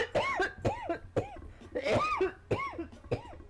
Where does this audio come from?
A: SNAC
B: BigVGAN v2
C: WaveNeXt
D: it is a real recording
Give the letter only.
D